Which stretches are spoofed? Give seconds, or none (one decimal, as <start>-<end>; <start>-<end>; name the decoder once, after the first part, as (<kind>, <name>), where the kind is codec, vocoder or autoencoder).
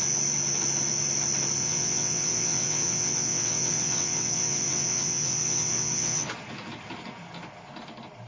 1.6-6.3 (vocoder, WaveNeXt)